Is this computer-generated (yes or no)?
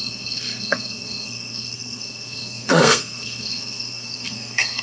yes